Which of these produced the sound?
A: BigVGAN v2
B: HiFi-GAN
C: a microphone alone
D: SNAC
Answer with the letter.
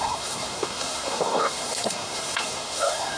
D